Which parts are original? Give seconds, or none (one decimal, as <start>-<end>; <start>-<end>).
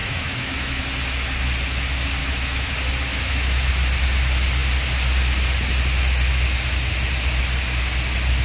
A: 0.8-2.2; 2.7-3.1; 3.7-8.4